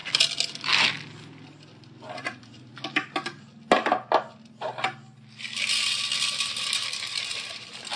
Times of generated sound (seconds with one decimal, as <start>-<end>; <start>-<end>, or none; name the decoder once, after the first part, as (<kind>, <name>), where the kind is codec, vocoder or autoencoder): 1.5-2.7 (vocoder, BigVGAN v2); 7.3-8.0